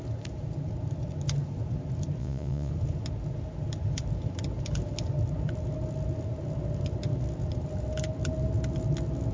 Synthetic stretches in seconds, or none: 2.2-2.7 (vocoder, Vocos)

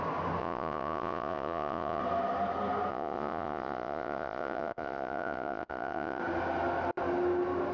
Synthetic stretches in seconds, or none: 0.4-2.0 (vocoder, Vocos); 2.9-6.2